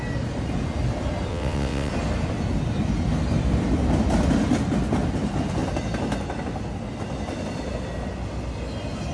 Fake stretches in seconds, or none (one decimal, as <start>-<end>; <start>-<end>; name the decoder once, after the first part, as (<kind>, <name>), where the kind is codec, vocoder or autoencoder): 1.3-1.9 (vocoder, WaveNeXt)